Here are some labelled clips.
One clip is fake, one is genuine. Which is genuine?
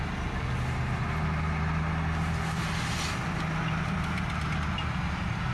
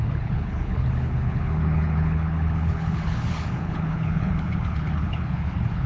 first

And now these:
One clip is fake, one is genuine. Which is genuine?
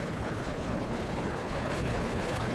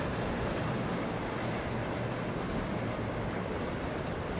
second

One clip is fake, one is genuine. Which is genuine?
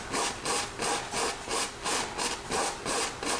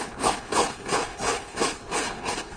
first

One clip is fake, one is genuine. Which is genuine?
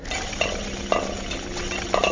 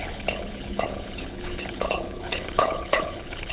first